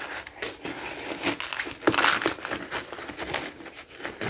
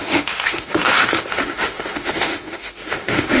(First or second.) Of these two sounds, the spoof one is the second